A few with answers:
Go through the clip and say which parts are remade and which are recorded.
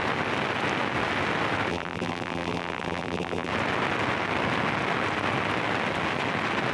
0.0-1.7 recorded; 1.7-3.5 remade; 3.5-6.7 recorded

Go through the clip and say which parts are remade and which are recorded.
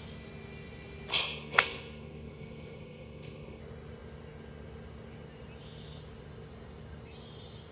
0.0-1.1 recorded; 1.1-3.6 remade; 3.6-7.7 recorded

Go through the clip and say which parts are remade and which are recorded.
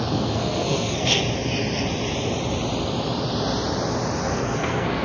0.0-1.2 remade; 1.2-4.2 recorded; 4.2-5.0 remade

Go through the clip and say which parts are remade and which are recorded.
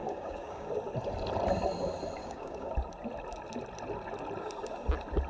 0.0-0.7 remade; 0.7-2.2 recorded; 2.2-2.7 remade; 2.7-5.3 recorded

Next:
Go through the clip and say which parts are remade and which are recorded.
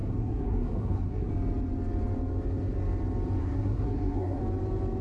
0.0-1.3 remade; 1.3-3.4 recorded; 3.4-4.4 remade; 4.4-5.0 recorded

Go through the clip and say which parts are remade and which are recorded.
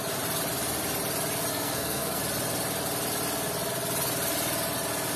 0.0-1.5 recorded; 1.5-2.2 remade; 2.2-5.2 recorded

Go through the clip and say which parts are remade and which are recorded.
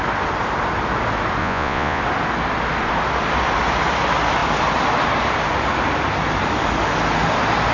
0.0-1.4 recorded; 1.4-2.0 remade; 2.0-7.7 recorded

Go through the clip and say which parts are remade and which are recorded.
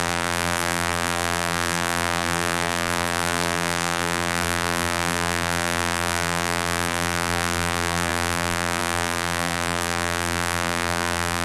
0.0-11.4 remade